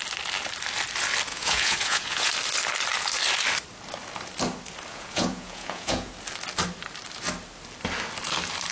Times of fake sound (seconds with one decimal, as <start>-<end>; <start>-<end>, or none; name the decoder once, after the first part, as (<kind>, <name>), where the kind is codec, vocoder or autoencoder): 1.3-2.3 (vocoder, Vocos); 4.9-6.1